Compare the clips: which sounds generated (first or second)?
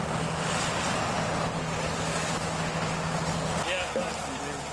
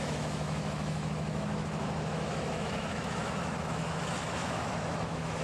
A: second